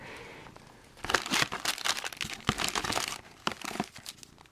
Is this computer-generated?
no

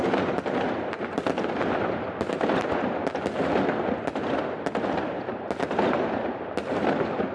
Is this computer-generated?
no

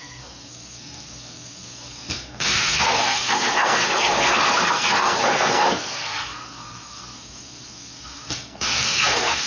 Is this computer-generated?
yes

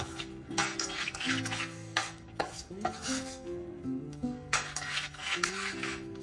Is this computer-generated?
yes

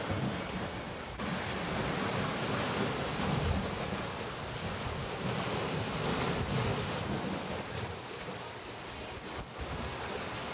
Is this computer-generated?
no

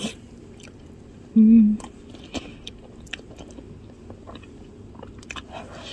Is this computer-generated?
no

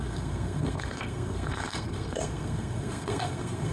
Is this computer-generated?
yes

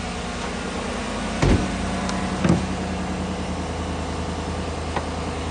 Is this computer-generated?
no